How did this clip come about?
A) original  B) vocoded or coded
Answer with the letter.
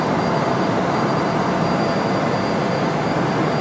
B